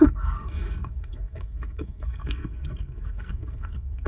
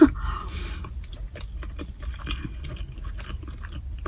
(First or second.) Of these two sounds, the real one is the second